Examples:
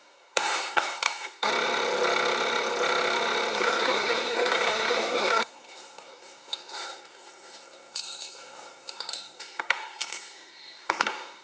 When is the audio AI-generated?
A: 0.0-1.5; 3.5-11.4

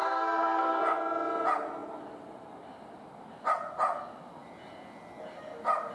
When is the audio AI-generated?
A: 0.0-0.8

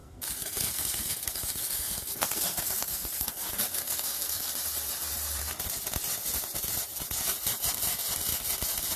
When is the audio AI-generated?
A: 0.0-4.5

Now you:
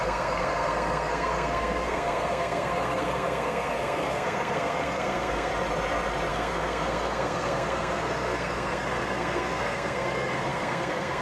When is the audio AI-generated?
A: 0.0-5.5; 6.3-11.2

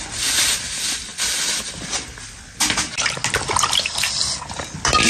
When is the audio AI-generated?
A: none

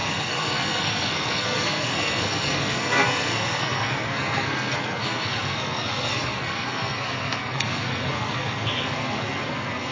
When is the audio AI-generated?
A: 0.0-9.9